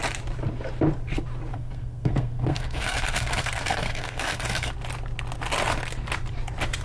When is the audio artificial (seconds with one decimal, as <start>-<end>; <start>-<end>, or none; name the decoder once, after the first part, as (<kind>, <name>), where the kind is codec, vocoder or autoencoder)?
1.5-4.7 (codec, SNAC)